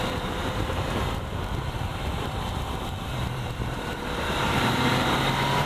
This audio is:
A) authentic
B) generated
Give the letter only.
B